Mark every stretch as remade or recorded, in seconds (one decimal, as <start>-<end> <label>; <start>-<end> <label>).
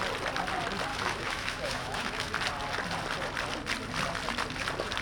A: 0.0-0.9 recorded; 0.9-2.3 remade; 2.3-5.0 recorded